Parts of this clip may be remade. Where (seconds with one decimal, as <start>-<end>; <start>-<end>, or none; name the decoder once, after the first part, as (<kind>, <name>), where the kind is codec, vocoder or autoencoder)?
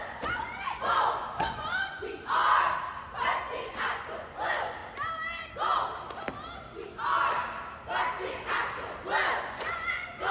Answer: 0.0-2.4 (vocoder, Vocos); 3.0-4.8; 9.4-10.3